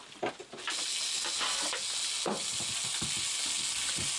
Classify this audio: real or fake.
real